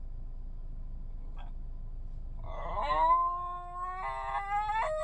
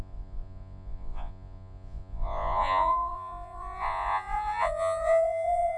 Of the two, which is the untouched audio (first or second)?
first